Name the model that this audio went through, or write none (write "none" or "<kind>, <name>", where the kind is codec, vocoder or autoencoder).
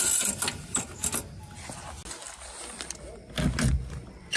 none